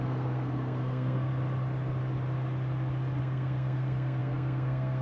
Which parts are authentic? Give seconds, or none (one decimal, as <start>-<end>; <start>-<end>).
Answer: 1.3-3.2